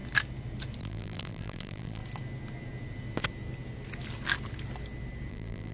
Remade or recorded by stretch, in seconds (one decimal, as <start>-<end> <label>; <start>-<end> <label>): 0.0-0.8 recorded; 0.8-2.0 remade; 2.0-5.3 recorded; 5.3-5.7 remade